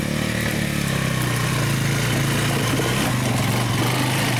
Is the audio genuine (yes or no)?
yes